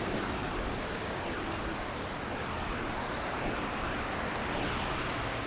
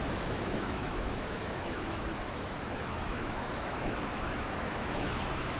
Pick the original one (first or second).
first